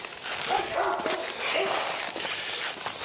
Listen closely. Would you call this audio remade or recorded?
recorded